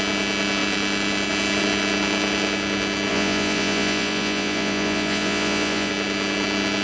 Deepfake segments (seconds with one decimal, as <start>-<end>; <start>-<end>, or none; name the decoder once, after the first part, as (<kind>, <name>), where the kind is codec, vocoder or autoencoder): 3.1-5.9 (vocoder, Vocos)